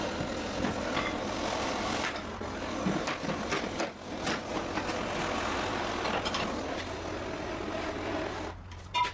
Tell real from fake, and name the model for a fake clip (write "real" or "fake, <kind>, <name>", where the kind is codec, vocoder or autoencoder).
real